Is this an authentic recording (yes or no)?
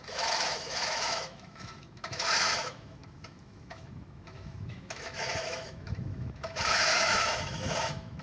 no